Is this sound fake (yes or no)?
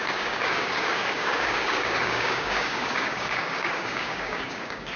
yes